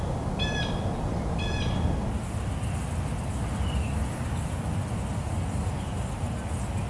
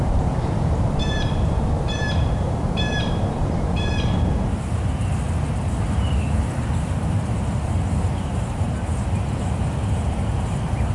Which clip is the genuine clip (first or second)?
first